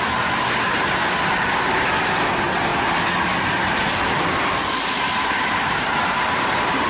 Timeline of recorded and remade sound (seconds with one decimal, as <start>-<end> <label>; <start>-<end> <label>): 0.0-2.7 recorded; 2.7-5.9 remade; 5.9-6.9 recorded